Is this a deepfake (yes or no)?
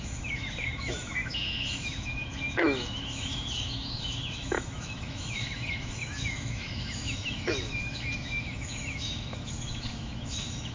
yes